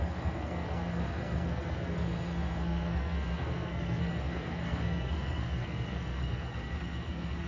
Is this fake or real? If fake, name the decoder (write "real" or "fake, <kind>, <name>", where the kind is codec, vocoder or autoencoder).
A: fake, codec, SNAC